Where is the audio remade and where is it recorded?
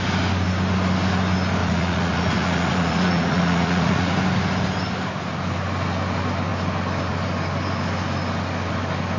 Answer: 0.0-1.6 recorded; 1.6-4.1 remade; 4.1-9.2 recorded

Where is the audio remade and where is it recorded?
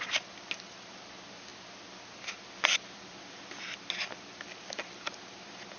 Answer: 0.0-5.8 recorded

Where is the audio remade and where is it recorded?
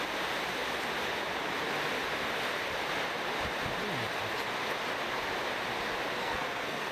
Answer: 0.0-6.2 recorded; 6.2-6.9 remade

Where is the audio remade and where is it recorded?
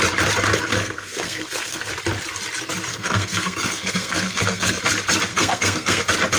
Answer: 0.0-0.7 recorded; 0.7-1.9 remade; 1.9-2.9 recorded; 2.9-4.8 remade; 4.8-5.3 recorded; 5.3-6.0 remade; 6.0-6.4 recorded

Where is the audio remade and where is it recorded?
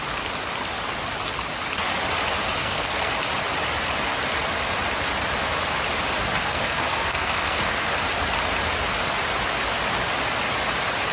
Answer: 0.0-2.6 recorded; 2.6-3.1 remade; 3.1-6.4 recorded; 6.4-7.9 remade; 7.9-11.1 recorded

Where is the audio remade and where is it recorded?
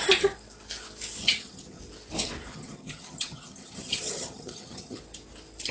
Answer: 0.0-1.2 recorded; 1.2-1.8 remade; 1.8-2.5 recorded; 2.5-5.0 remade; 5.0-5.7 recorded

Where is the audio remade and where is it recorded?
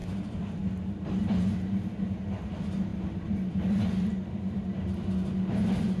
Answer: 0.0-6.0 recorded